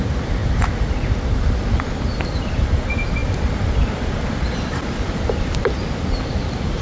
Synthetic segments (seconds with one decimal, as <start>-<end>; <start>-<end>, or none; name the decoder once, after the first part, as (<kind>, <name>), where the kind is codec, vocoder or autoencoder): none